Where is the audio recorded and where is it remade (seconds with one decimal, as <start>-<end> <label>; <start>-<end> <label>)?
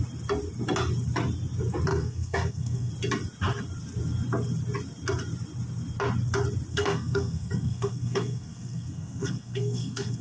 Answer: 0.0-1.9 recorded; 1.9-2.9 remade; 2.9-6.7 recorded; 6.7-10.2 remade